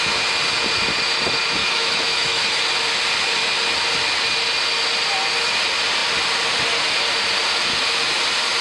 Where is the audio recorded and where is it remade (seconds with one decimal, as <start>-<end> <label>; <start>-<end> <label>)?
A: 0.0-1.6 recorded; 1.6-2.6 remade; 2.6-8.6 recorded